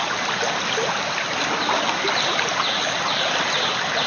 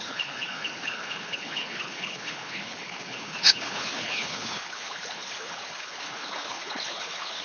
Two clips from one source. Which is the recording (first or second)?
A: first